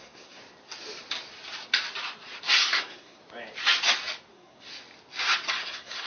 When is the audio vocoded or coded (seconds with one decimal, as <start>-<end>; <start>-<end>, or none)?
0.0-0.4; 2.7-3.2; 4.3-4.7; 5.5-6.1

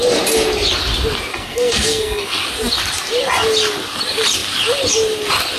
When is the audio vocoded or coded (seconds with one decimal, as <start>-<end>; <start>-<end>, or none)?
1.3-2.4

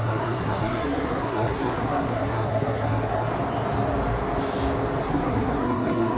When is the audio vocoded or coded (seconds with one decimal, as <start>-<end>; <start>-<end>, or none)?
0.0-3.3; 5.0-6.2

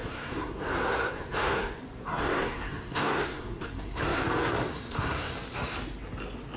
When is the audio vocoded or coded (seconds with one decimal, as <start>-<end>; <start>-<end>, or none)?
0.0-1.8; 2.2-4.2; 4.7-5.3

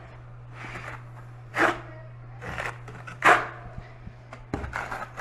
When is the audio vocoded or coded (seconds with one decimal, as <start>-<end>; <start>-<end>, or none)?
none